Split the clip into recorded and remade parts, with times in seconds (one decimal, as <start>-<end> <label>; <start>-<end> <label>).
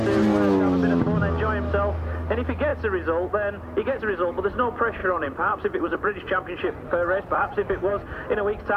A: 0.0-5.0 recorded; 5.0-7.9 remade; 7.9-8.8 recorded